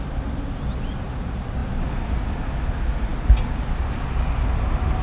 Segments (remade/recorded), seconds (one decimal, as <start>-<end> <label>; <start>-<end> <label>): 0.0-5.0 recorded

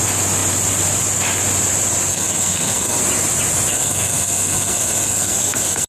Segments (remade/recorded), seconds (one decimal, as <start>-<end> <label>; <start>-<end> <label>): 0.0-2.1 recorded; 2.1-3.0 remade; 3.0-3.7 recorded; 3.7-5.9 remade